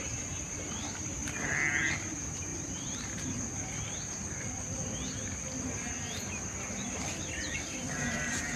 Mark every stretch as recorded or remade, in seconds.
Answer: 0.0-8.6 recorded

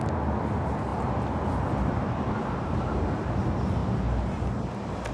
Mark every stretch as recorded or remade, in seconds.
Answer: 0.0-0.9 recorded; 0.9-2.3 remade; 2.3-3.8 recorded; 3.8-5.1 remade

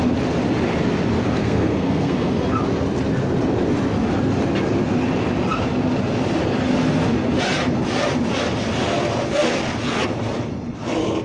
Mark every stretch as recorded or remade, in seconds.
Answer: 0.0-1.4 recorded; 1.4-2.3 remade; 2.3-11.2 recorded